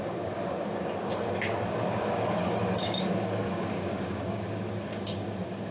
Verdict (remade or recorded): remade